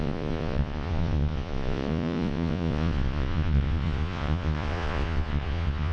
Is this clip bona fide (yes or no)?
no